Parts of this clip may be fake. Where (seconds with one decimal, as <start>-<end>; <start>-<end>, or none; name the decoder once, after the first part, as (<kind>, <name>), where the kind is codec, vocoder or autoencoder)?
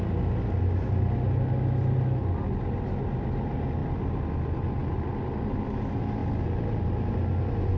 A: 3.8-4.3 (vocoder, BigVGAN v2)